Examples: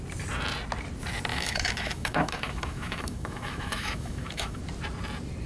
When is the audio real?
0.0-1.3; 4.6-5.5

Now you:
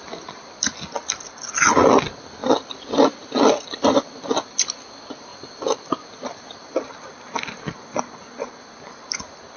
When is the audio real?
0.0-2.4; 4.1-5.3; 8.3-9.6

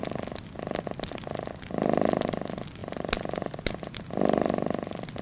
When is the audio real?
0.0-5.2

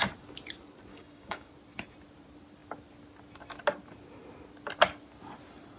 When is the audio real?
0.0-0.9; 1.5-5.8

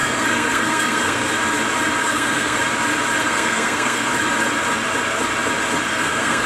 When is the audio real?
1.3-2.0; 2.6-3.2; 4.1-5.9

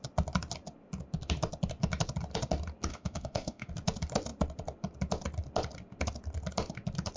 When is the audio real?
0.0-2.9; 3.7-7.2

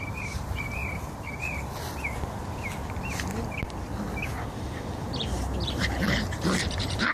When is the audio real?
0.8-5.1

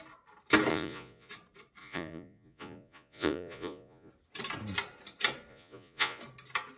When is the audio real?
0.0-0.7; 1.3-1.8; 4.1-5.5; 6.2-6.8